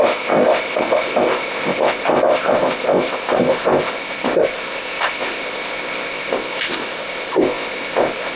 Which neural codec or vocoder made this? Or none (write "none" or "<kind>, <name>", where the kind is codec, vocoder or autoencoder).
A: codec, ZipCodec